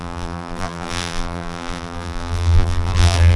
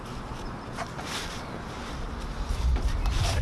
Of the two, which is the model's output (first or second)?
first